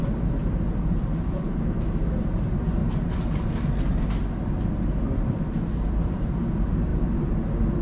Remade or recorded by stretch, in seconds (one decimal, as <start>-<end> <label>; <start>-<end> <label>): 0.0-2.8 remade; 2.8-5.2 recorded; 5.2-7.8 remade